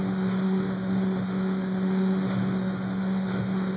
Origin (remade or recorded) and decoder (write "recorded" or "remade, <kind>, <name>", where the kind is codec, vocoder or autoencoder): remade, autoencoder, DAC-VAE